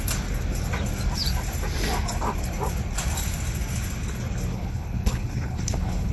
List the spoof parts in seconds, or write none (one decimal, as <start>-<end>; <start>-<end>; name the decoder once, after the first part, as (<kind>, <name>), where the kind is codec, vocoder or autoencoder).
4.5-6.1 (codec, HILCodec)